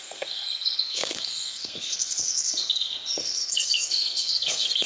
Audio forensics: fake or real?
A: fake